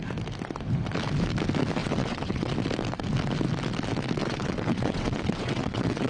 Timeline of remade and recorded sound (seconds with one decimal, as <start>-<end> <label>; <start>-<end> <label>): 0.0-1.8 recorded; 1.8-2.5 remade; 2.5-4.2 recorded; 4.2-6.1 remade